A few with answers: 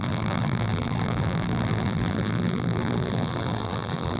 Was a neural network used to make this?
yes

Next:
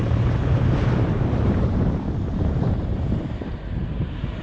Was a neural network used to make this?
yes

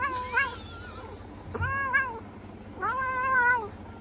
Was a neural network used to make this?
no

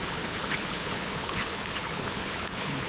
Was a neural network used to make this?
yes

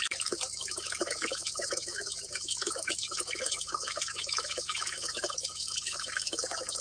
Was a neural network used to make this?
yes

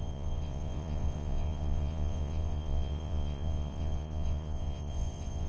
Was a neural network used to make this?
yes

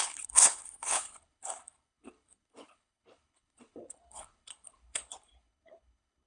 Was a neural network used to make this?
yes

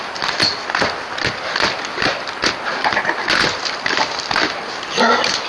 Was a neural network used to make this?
no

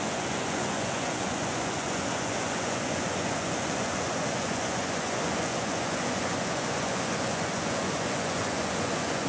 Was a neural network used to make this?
yes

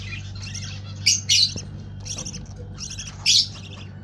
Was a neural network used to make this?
no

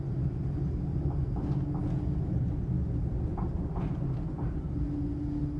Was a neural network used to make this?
no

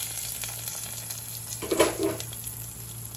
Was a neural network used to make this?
no